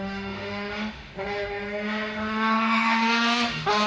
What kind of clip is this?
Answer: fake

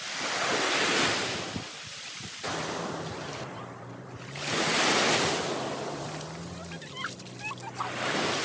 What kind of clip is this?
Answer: real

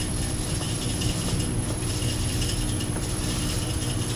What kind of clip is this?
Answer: fake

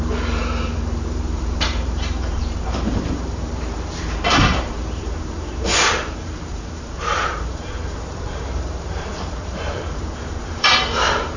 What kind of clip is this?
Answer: fake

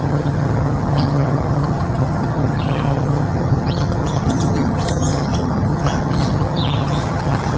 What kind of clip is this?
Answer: fake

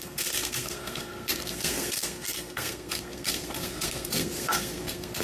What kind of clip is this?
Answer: fake